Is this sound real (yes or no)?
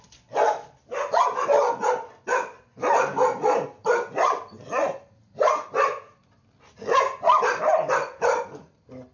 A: yes